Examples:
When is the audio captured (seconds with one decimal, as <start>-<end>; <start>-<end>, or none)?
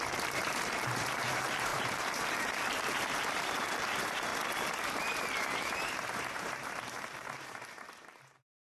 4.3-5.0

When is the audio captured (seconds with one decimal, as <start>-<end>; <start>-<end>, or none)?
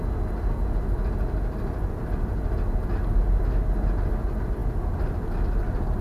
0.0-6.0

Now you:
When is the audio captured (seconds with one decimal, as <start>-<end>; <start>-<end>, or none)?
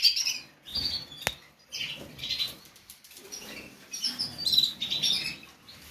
0.0-2.1; 4.0-4.4; 5.1-5.9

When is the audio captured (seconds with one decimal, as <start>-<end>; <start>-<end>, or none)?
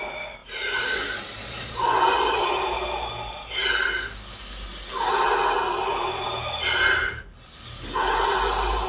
0.0-0.4; 3.1-8.9